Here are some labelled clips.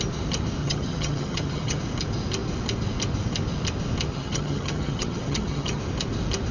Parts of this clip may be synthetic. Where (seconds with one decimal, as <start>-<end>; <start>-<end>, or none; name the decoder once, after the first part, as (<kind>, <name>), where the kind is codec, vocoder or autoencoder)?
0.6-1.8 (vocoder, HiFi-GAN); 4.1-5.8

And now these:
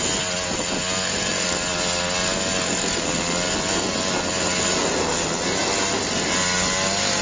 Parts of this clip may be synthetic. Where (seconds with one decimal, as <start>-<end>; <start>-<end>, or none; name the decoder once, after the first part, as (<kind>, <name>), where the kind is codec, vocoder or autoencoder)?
none

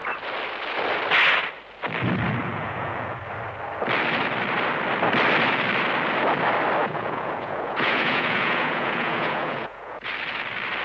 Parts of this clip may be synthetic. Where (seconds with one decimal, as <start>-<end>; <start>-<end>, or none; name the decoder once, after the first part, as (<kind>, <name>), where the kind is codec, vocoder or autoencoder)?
2.4-3.2 (vocoder, Vocos); 6.8-10.1